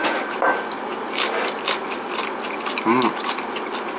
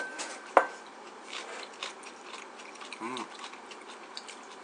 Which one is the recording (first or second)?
first